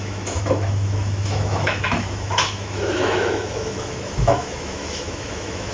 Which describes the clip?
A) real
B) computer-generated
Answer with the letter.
B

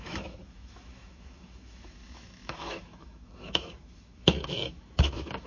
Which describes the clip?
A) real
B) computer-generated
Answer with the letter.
B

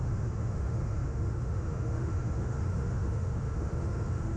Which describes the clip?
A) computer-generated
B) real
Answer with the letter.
A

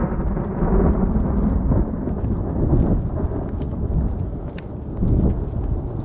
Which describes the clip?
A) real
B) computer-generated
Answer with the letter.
A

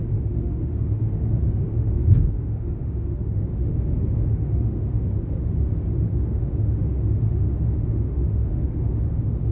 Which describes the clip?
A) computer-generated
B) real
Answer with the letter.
A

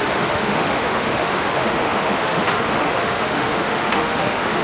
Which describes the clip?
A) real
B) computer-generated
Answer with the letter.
B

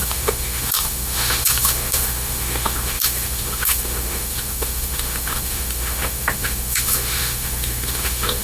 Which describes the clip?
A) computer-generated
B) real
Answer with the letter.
A